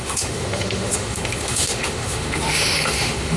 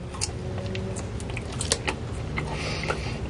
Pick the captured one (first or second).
second